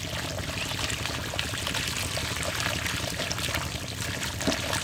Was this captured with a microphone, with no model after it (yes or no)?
yes